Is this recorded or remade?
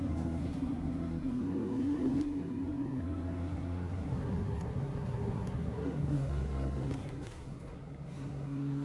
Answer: remade